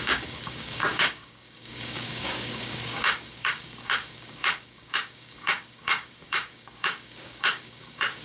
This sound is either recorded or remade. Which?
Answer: remade